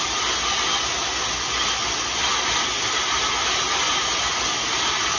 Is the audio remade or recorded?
recorded